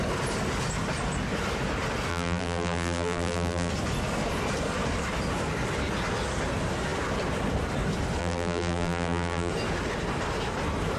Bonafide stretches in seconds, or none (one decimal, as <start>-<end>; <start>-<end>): 0.0-2.1; 3.7-8.2; 9.5-11.0